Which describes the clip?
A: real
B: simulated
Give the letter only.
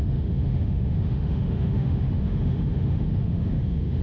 B